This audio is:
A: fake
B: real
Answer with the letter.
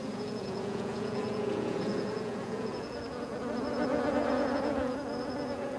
A